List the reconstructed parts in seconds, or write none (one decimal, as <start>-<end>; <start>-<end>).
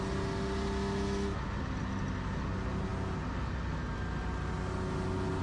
none